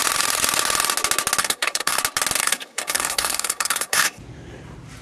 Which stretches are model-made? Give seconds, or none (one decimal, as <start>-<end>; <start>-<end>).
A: 1.4-2.0; 2.4-4.2